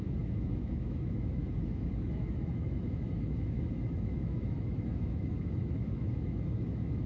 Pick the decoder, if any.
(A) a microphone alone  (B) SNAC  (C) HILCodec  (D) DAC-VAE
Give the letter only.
D